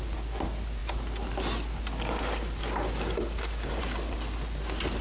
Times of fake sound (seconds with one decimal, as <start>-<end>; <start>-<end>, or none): none